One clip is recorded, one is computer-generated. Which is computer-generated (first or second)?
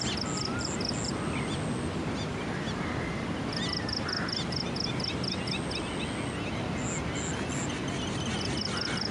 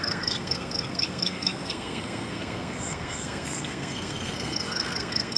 second